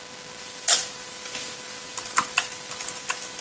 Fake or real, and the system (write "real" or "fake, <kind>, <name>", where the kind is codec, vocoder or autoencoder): real